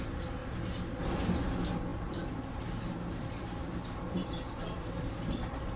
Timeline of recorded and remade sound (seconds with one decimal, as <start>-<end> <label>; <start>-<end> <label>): 0.0-0.4 remade; 0.4-1.0 recorded; 1.0-5.8 remade

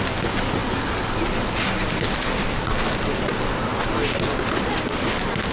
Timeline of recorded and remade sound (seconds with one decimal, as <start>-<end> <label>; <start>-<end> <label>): 0.0-5.5 recorded

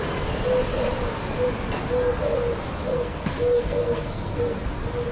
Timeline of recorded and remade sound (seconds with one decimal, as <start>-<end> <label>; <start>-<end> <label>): 0.0-2.9 recorded; 2.9-4.6 remade; 4.6-5.1 recorded

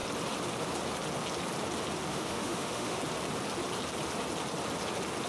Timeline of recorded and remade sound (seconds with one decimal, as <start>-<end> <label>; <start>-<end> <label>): 0.0-2.1 recorded; 2.1-3.0 remade; 3.0-5.3 recorded

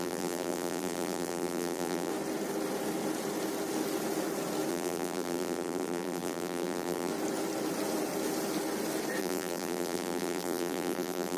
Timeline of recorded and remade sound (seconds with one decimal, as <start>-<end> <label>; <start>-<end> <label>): 0.0-2.1 remade; 2.1-4.7 recorded; 4.7-7.1 remade; 7.1-9.2 recorded; 9.2-11.4 remade